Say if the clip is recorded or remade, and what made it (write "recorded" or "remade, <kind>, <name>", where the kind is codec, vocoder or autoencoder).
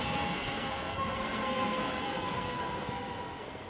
remade, codec, SNAC